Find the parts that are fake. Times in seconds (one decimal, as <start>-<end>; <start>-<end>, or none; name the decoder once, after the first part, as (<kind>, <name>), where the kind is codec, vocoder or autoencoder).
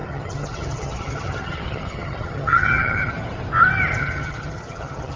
0.0-3.1 (vocoder, HiFi-GAN); 4.0-5.2